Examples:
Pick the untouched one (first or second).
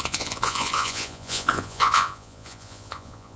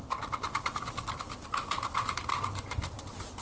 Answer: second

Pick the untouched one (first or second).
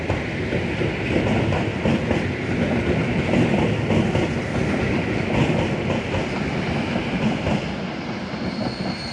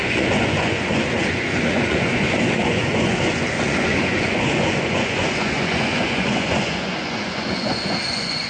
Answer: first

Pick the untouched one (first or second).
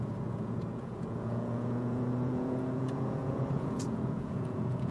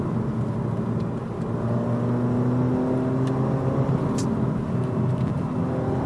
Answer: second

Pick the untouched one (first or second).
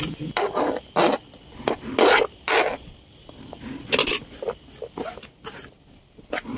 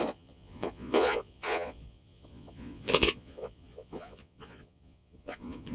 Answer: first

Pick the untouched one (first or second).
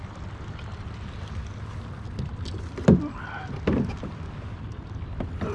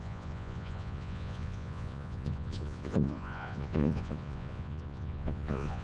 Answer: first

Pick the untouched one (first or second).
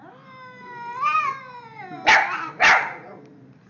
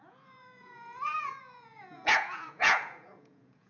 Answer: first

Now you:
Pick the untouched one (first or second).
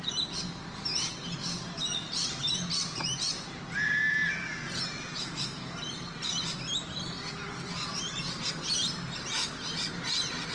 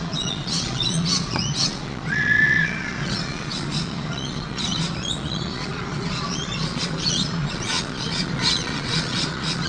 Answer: first